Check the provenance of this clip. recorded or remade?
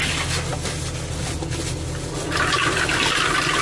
recorded